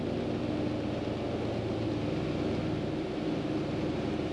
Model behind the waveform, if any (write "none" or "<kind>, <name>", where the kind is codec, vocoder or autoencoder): none